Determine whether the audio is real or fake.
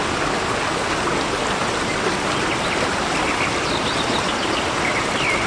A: real